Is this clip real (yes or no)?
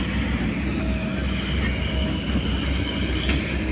yes